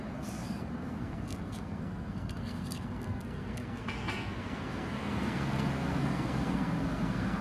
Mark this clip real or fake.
fake